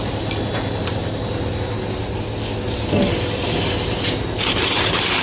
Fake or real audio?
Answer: real